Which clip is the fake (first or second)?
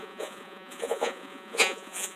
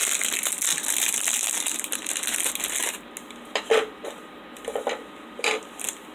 first